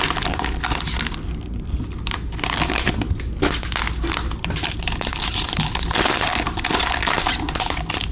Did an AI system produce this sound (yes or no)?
yes